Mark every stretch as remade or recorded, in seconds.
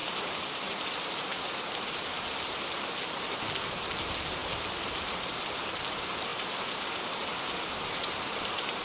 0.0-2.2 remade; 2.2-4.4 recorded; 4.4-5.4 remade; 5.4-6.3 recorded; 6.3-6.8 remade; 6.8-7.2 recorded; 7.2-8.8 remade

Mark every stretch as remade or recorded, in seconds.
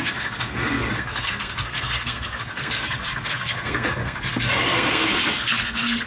0.0-6.1 remade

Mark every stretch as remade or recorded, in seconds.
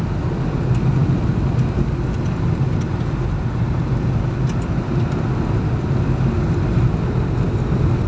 0.0-8.1 recorded